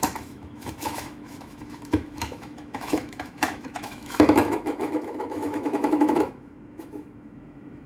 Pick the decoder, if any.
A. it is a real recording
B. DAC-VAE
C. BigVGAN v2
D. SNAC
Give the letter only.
B